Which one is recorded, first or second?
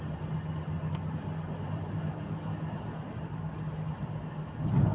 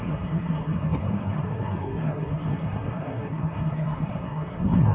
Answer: first